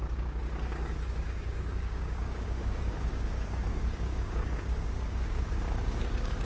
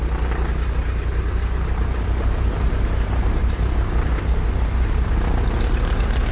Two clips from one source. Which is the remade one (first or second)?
first